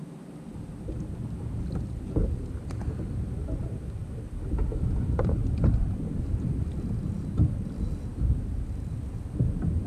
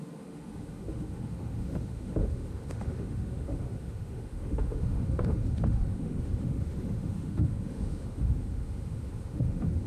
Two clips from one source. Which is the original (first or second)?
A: first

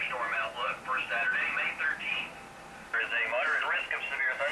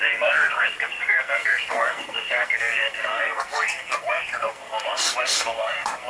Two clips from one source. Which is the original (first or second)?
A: first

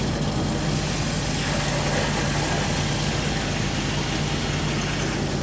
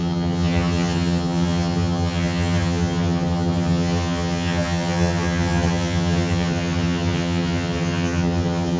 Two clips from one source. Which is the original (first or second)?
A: first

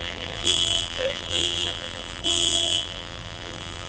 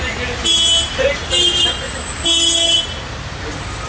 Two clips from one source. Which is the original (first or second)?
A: second